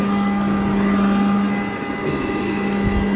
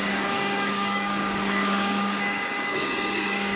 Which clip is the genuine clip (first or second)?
first